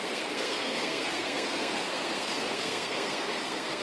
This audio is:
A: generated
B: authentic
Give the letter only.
A